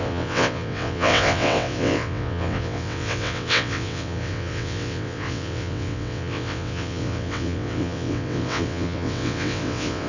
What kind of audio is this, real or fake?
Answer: fake